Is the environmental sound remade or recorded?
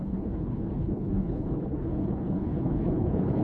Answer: remade